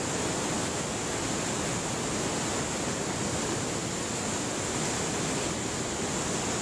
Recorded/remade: recorded